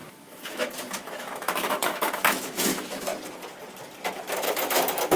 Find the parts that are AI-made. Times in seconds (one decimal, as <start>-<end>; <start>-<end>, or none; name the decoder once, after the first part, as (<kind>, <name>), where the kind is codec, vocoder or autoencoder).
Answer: 0.0-3.1 (autoencoder, DAC-VAE); 4.3-5.2